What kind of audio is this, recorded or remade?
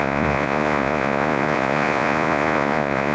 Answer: remade